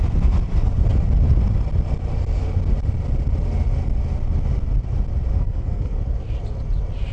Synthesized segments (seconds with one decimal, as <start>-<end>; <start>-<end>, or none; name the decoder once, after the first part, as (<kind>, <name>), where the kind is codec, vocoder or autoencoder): 5.3-6.0 (codec, SNAC)